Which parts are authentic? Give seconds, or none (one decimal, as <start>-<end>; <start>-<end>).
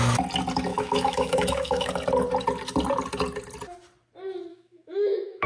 0.0-0.7; 1.9-4.5